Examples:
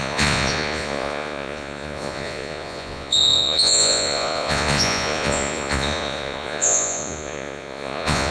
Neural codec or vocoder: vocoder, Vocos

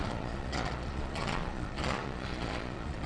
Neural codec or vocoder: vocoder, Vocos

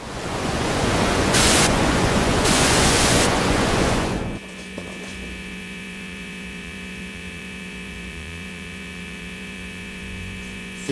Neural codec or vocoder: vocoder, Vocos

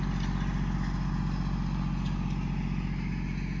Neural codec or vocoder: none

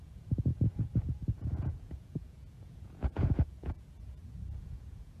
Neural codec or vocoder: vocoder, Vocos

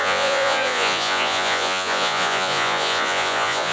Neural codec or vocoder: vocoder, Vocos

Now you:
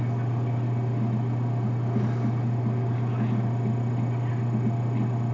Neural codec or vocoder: none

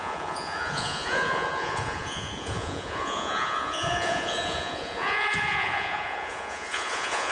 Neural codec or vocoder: vocoder, Vocos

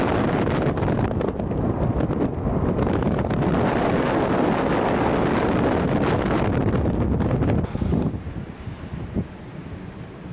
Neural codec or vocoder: none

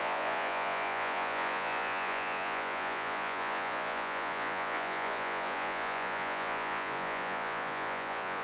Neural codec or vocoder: vocoder, Vocos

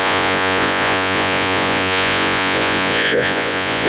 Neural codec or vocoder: vocoder, Vocos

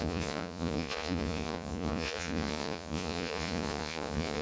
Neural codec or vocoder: vocoder, Vocos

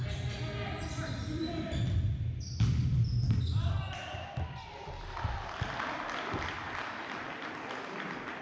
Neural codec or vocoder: none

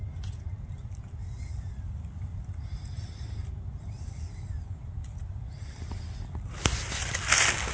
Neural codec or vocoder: none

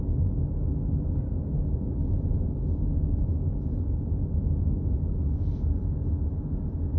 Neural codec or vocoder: none